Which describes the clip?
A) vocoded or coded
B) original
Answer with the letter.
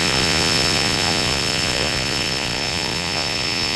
A